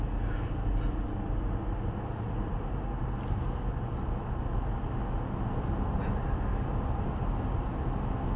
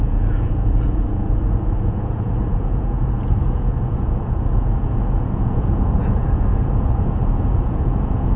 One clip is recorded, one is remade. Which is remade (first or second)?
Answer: second